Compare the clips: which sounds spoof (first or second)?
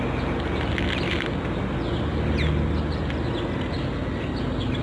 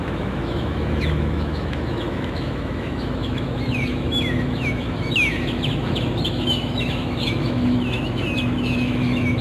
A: second